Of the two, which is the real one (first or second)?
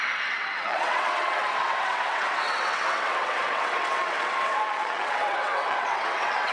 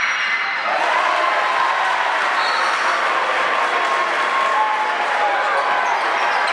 second